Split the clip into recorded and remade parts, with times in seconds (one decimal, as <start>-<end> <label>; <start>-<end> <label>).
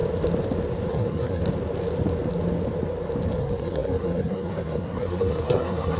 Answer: 0.0-0.9 recorded; 0.9-1.4 remade; 1.4-3.4 recorded; 3.4-6.0 remade